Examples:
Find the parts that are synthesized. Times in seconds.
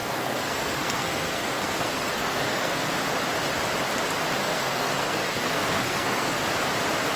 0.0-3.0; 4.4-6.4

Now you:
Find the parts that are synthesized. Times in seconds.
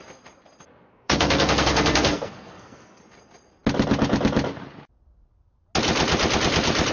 0.7-3.0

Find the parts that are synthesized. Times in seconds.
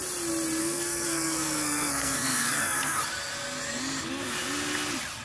0.6-3.0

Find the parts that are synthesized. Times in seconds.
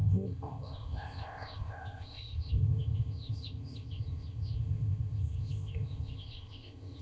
0.0-7.0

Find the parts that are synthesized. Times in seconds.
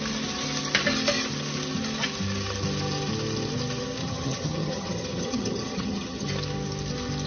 4.0-6.3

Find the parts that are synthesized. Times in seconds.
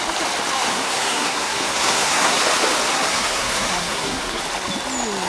0.7-2.4; 2.9-4.4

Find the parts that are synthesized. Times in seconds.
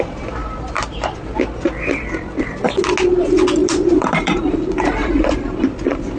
0.4-1.2; 3.6-5.6